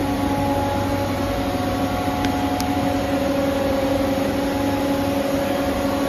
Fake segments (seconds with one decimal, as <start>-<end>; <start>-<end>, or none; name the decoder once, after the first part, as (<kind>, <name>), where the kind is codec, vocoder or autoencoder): none